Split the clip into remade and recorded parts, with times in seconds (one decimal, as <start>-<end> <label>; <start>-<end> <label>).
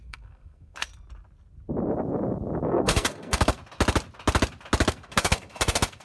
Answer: 0.0-0.9 remade; 0.9-2.6 recorded; 2.6-3.6 remade; 3.6-4.9 recorded; 4.9-6.0 remade